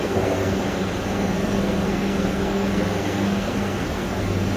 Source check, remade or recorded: remade